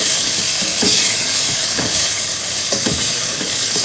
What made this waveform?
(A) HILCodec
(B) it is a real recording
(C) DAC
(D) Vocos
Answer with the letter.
C